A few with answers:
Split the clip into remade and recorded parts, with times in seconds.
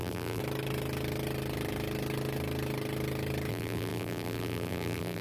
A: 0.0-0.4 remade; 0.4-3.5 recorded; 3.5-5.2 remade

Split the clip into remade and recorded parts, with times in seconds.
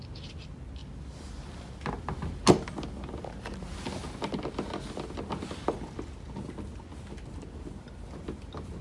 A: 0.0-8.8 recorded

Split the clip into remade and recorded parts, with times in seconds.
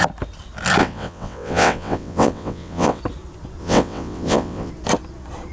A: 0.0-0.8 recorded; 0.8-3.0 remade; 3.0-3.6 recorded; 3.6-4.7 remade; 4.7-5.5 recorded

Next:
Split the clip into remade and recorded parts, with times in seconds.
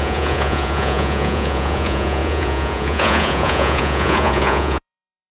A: 0.0-5.3 remade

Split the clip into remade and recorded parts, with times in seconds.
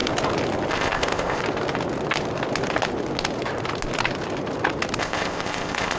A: 0.0-0.7 recorded; 0.7-1.4 remade; 1.4-5.0 recorded; 5.0-6.0 remade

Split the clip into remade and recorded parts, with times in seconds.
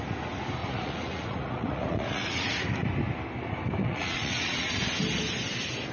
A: 0.0-0.6 recorded; 0.6-2.5 remade; 2.5-3.8 recorded; 3.8-4.7 remade; 4.7-5.9 recorded